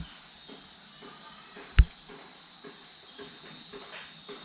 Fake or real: real